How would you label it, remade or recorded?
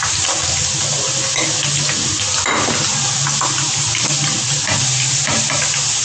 recorded